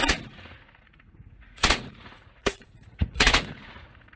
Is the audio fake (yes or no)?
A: yes